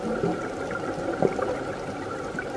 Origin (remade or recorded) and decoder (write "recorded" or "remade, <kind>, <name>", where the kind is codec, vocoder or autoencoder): recorded